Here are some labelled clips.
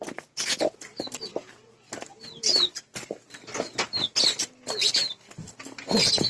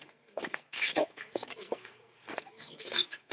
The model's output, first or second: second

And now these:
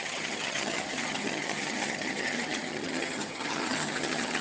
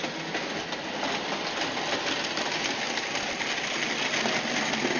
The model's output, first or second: first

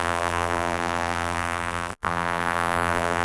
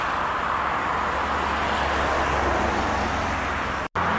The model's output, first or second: first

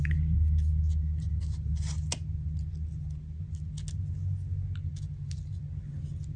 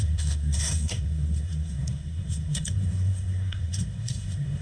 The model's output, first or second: second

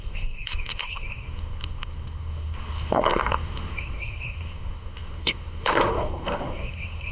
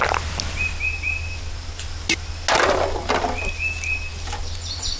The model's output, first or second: first